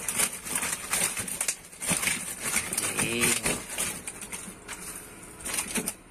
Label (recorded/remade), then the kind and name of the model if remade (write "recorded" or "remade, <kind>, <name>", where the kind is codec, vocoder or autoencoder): recorded